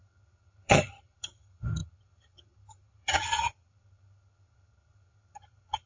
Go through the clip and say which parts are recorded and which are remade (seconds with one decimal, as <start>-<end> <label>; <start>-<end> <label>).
0.0-5.9 remade